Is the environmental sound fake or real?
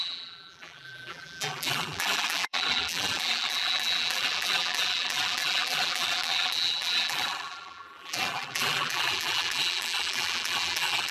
fake